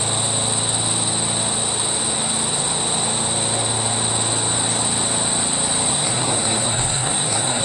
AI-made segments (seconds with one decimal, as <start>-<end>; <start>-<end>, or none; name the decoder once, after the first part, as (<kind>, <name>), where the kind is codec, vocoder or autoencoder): 5.9-7.6 (codec, SNAC)